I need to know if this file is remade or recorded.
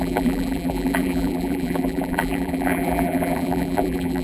remade